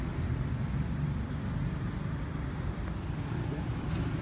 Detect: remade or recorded remade